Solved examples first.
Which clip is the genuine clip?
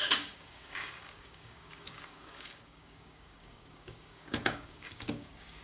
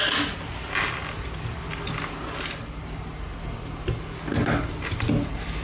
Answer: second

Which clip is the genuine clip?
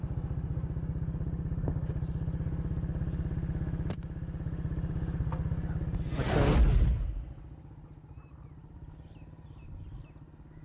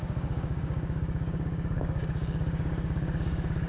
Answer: first